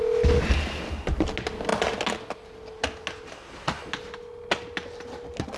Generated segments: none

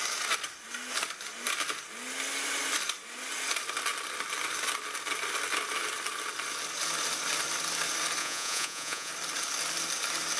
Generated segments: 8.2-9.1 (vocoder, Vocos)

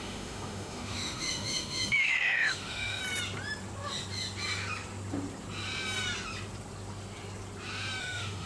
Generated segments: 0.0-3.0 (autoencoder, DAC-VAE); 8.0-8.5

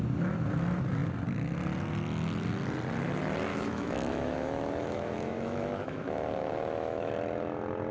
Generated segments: 3.5-7.1 (autoencoder, DAC-VAE)